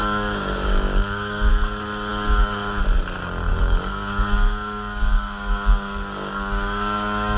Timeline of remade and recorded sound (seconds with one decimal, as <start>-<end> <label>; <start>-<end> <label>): 0.0-1.5 remade; 1.5-2.1 recorded; 2.1-2.8 remade; 2.8-3.5 recorded; 3.5-7.4 remade